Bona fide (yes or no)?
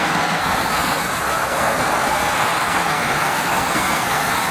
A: no